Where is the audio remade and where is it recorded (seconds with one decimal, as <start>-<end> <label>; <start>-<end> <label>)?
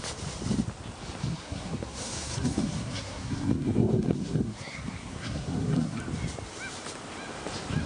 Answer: 0.0-1.3 recorded; 1.3-6.0 remade; 6.0-7.9 recorded